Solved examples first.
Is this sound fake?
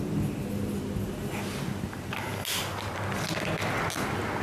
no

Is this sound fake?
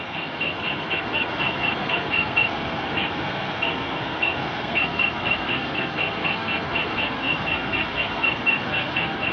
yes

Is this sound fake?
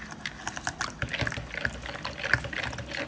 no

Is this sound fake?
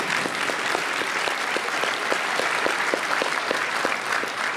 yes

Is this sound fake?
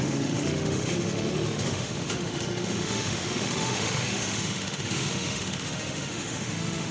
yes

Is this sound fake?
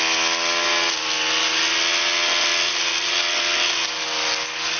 no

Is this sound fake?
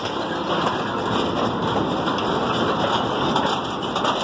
no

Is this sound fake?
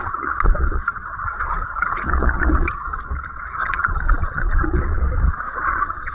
yes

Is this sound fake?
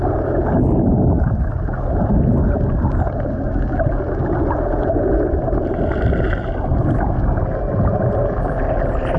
no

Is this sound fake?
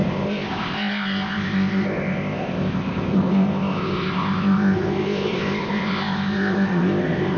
yes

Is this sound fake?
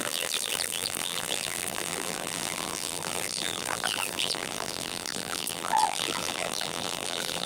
yes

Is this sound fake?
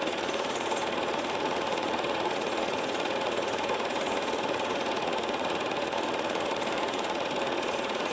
yes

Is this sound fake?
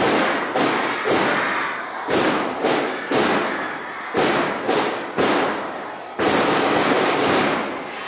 no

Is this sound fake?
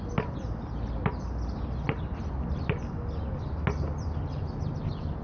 no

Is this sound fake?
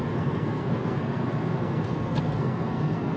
yes